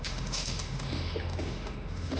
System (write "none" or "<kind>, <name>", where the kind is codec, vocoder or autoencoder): autoencoder, DAC-VAE